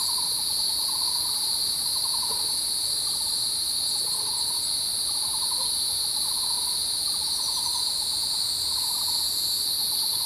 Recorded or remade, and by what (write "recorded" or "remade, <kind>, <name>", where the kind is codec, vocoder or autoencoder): recorded